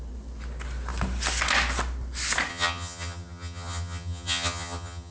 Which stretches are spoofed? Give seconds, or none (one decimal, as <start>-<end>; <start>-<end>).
2.5-5.1